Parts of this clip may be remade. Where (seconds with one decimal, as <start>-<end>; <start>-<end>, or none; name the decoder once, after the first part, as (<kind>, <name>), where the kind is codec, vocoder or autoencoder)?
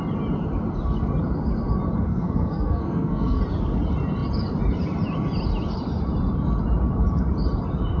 2.1-3.4 (codec, SNAC)